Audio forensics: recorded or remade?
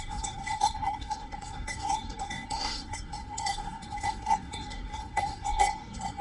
remade